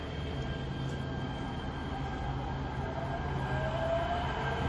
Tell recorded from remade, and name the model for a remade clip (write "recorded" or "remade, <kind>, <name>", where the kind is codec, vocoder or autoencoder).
recorded